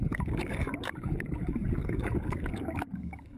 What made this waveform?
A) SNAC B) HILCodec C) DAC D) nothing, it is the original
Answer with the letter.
C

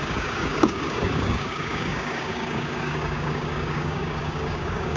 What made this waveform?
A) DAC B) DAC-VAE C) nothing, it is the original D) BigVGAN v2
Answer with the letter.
A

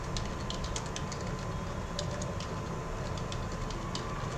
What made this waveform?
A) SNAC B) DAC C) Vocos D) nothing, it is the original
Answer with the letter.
D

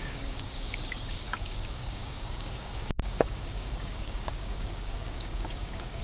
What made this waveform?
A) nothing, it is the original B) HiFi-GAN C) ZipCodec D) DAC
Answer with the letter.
D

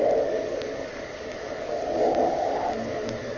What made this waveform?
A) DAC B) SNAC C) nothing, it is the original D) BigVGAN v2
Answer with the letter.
A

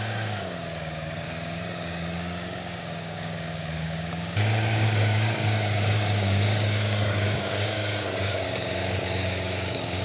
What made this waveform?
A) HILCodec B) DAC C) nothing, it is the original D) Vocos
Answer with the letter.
B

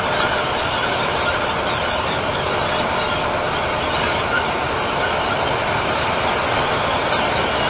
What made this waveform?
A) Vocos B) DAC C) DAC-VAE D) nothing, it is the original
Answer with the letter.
D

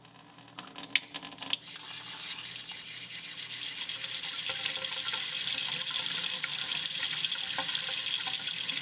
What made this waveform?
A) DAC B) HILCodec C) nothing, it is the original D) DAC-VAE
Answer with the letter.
C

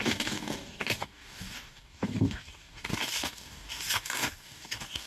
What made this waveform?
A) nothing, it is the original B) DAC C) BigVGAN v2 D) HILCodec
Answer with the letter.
B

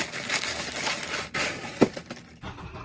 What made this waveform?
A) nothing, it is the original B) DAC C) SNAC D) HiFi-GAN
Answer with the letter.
A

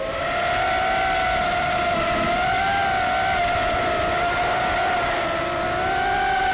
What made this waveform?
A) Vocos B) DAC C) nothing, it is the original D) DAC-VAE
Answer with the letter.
C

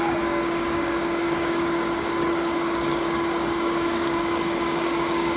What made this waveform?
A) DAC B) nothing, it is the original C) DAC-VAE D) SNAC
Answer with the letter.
A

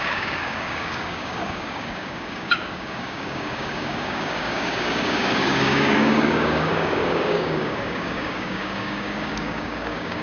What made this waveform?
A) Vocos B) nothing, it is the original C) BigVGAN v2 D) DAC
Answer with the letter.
D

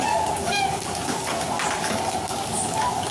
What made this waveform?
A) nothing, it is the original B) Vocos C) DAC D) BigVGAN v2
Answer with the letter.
C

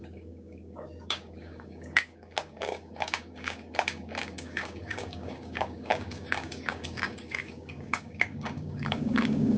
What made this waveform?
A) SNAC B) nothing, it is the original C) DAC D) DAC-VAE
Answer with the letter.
C